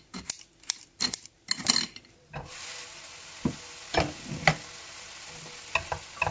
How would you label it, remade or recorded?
recorded